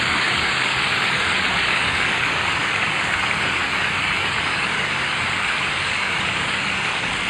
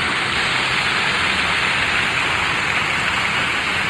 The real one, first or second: second